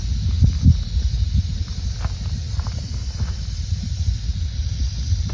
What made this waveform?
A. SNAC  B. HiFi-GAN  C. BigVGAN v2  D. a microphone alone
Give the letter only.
D